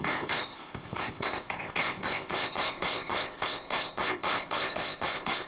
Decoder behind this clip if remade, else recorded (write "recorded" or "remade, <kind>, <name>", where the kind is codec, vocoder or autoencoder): remade, codec, ZipCodec